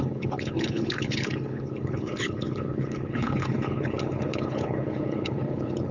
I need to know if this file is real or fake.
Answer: fake